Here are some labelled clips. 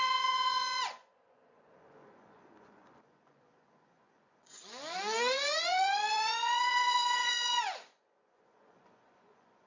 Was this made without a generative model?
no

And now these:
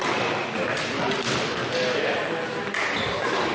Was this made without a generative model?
yes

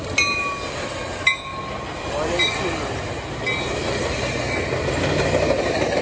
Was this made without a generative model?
yes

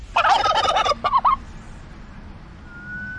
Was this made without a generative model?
yes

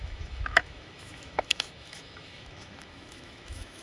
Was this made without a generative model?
no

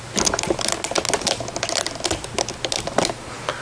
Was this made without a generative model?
yes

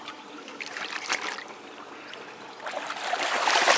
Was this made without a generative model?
no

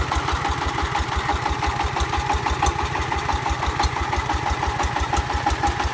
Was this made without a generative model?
yes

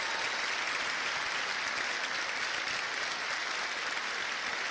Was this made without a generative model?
yes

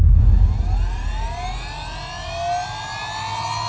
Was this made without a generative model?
yes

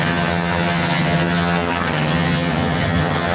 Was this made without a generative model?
no